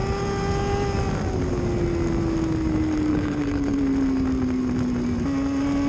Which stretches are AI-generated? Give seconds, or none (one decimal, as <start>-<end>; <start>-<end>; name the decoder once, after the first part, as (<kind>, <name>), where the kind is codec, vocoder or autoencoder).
3.1-3.8 (codec, HILCodec)